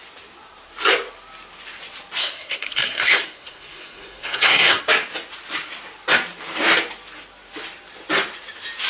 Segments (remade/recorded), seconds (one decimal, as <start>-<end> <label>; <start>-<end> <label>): 0.0-2.2 recorded; 2.2-4.8 remade; 4.8-8.9 recorded